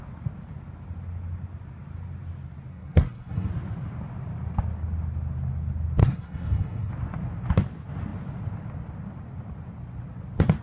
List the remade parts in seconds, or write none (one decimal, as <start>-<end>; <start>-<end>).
2.7-3.5; 6.0-6.9